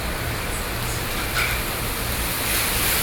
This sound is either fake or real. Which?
real